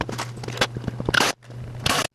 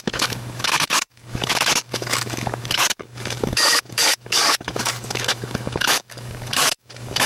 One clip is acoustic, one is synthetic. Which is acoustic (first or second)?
first